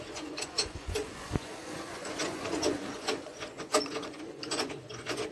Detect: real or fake fake